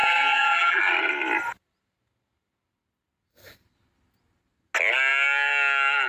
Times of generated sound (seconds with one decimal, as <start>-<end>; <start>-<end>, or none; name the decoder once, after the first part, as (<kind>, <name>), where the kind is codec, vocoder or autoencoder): 0.0-0.8 (vocoder, BigVGAN v2)